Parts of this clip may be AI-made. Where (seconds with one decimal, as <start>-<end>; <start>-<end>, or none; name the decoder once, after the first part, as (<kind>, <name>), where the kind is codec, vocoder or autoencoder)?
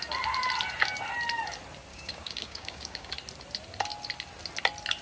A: 1.9-3.1 (codec, DAC)